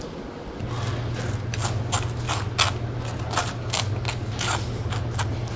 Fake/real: real